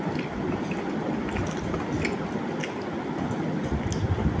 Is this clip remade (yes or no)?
no